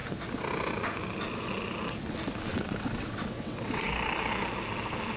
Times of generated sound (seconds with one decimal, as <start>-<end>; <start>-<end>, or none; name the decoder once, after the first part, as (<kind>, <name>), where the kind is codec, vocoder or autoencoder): 2.5-3.8 (vocoder, WaveNeXt)